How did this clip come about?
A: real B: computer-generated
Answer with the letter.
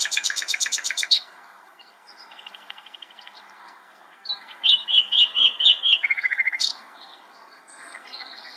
B